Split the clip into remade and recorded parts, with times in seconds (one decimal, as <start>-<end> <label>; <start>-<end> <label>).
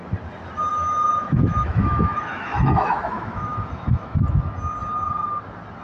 0.0-0.7 recorded; 0.7-4.2 remade; 4.2-5.8 recorded